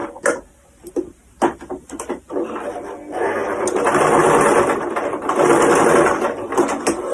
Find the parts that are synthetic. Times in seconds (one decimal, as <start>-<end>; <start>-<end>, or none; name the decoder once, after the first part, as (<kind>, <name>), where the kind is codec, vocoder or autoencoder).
none